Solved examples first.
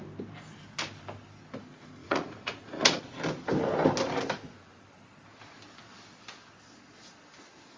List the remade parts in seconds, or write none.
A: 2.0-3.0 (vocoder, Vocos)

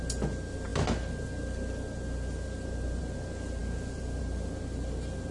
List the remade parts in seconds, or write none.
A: none